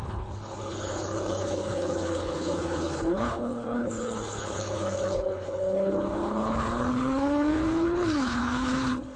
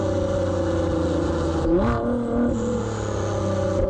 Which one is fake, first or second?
first